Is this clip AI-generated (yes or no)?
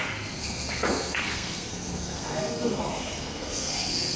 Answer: yes